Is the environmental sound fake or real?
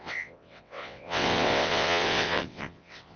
fake